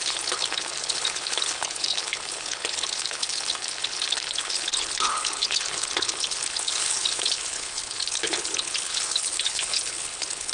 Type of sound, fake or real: fake